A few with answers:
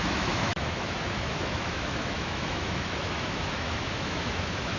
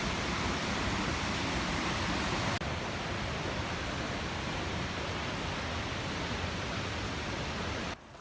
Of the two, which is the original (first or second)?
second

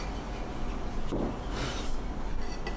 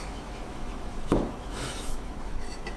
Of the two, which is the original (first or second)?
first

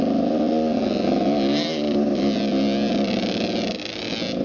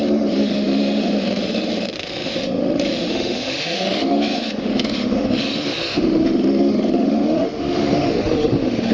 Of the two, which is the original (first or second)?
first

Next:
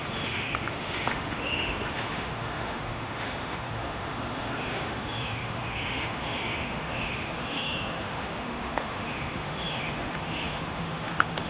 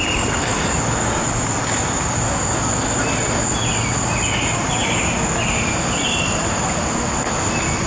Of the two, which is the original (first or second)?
second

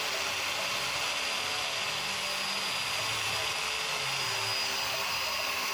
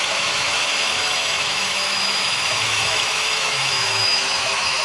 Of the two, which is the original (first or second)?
first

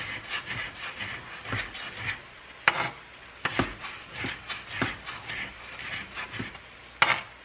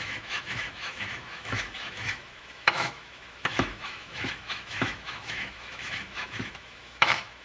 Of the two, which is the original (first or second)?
first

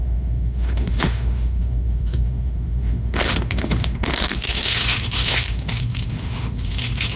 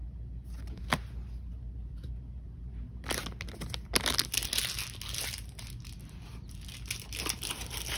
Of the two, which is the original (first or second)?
second